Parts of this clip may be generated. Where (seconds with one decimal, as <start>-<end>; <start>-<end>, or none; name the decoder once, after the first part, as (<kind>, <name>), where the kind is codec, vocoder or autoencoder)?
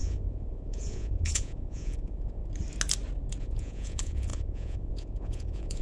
0.0-2.4 (vocoder, Vocos); 3.4-5.8